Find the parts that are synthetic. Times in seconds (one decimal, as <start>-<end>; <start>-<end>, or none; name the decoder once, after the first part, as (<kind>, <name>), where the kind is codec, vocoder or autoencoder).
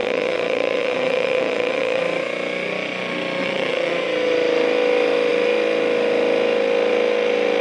0.0-2.0 (vocoder, WaveNeXt); 3.4-3.9